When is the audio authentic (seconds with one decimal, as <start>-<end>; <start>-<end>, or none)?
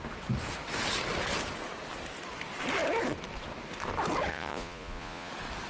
0.0-4.3; 5.3-5.7